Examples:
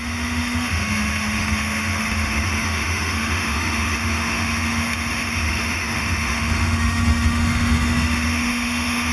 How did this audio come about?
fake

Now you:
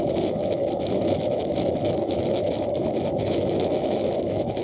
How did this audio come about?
fake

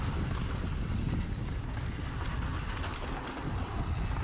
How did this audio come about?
real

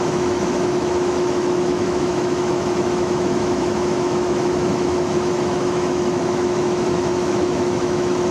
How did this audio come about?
fake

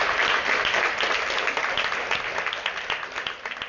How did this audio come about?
real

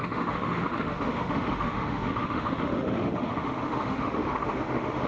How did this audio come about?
fake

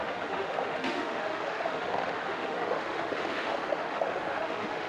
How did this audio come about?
fake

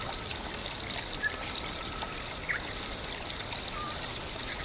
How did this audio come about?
real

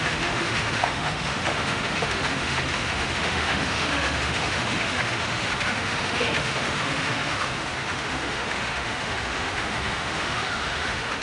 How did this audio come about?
fake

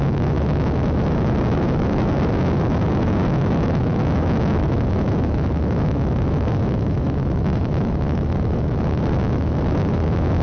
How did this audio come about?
fake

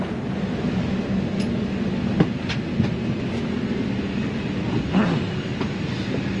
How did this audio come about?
real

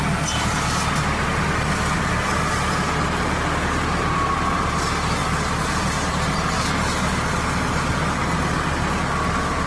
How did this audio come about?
real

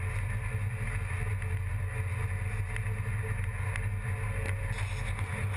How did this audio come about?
real